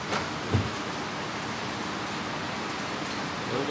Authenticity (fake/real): real